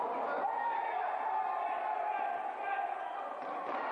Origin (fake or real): real